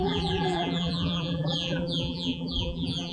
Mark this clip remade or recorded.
remade